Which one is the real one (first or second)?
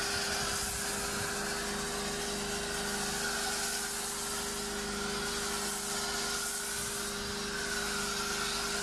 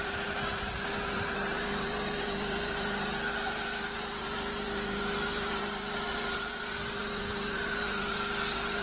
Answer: first